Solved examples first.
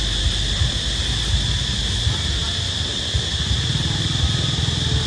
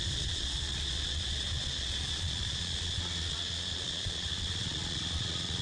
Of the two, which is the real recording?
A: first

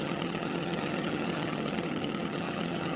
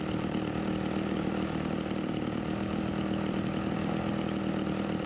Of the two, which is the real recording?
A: second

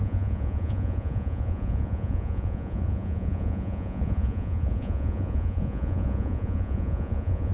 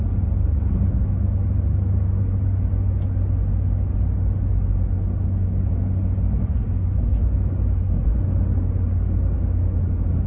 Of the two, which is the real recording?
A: second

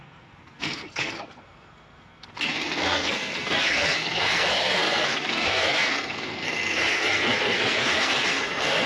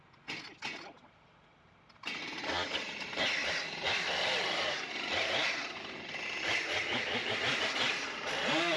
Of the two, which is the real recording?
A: second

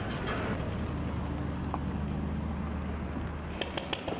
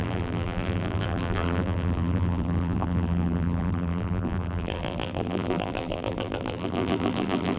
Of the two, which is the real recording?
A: first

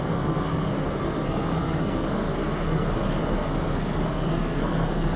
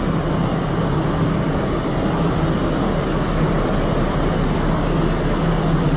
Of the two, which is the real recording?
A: second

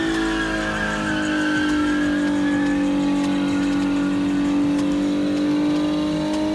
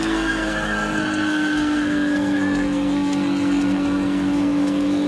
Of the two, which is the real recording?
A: first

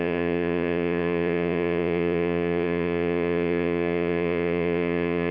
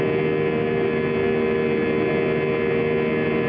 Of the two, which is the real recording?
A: second